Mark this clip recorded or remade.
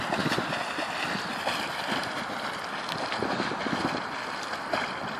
recorded